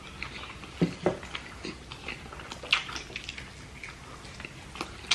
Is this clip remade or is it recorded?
recorded